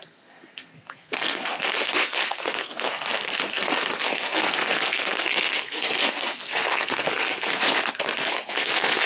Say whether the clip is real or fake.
fake